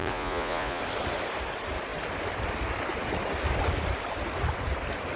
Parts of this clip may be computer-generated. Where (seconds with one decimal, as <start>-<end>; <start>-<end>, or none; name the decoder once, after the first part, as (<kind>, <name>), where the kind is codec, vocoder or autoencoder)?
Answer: 0.0-0.8 (vocoder, Vocos)